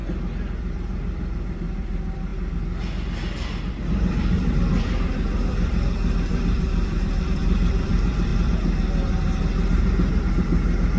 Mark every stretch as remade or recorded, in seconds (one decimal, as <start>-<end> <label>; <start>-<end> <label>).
0.0-0.6 recorded; 0.6-2.3 remade; 2.3-3.7 recorded; 3.7-8.3 remade; 8.3-10.3 recorded; 10.3-11.0 remade